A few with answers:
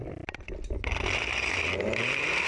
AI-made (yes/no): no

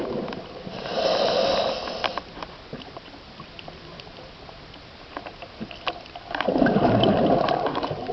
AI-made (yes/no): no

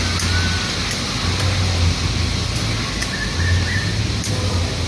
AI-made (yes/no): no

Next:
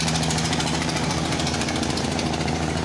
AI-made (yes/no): yes